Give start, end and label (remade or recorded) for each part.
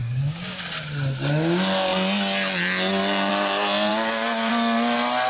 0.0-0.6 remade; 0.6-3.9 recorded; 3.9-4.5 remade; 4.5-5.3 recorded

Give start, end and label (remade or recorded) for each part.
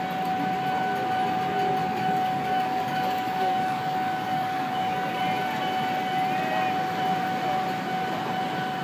0.0-1.8 recorded; 1.8-5.2 remade; 5.2-8.8 recorded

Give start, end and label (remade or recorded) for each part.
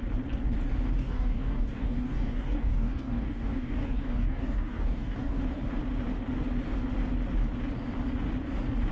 0.0-1.0 recorded; 1.0-5.4 remade; 5.4-8.9 recorded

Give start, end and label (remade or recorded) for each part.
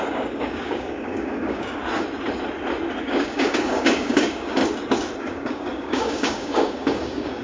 0.0-1.8 remade; 1.8-3.0 recorded; 3.0-4.6 remade; 4.6-5.2 recorded; 5.2-7.4 remade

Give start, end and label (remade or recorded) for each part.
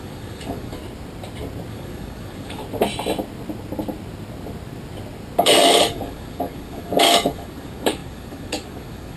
0.0-0.8 remade; 0.8-1.7 recorded; 1.7-2.6 remade; 2.6-5.4 recorded; 5.4-9.2 remade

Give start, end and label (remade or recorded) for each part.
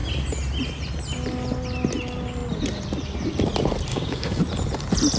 0.0-3.9 recorded; 3.9-4.4 remade; 4.4-5.2 recorded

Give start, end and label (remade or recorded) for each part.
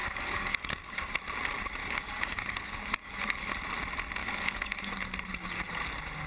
0.0-1.1 remade; 1.1-1.8 recorded; 1.8-3.5 remade; 3.5-4.2 recorded; 4.2-5.0 remade; 5.0-6.3 recorded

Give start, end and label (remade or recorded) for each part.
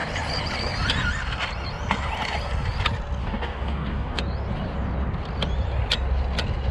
0.0-3.2 recorded; 3.2-4.2 remade; 4.2-6.7 recorded